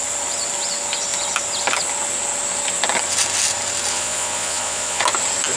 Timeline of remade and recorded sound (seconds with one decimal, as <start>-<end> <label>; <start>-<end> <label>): 0.0-3.9 recorded; 3.9-5.0 remade; 5.0-5.6 recorded